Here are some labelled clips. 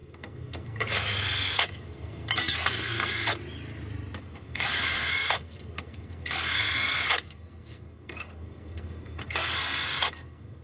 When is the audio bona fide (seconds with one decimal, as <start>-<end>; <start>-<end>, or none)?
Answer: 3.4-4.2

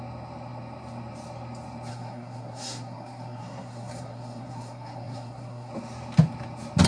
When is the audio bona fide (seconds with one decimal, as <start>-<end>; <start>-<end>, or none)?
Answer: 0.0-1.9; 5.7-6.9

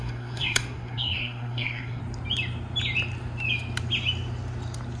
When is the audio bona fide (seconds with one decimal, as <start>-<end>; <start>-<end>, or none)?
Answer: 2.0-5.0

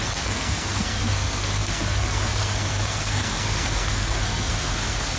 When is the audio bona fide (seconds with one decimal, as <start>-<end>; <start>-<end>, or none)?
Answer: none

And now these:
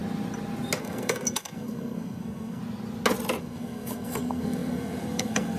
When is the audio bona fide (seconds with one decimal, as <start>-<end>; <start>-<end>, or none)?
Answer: 0.0-0.8; 2.6-3.4